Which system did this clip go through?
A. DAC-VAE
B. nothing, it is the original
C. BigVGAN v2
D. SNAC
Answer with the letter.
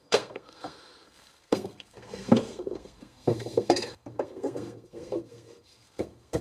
D